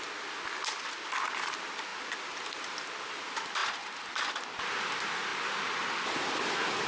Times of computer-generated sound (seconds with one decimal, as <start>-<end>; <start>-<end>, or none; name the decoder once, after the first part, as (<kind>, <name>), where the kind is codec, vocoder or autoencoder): none